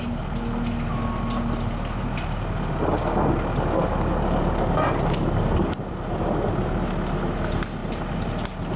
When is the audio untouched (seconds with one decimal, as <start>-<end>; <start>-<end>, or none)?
0.0-8.8